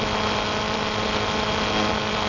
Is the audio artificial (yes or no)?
no